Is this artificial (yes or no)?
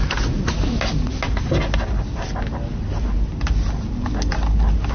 no